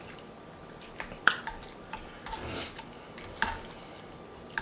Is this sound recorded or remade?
recorded